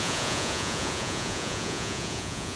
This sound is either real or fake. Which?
fake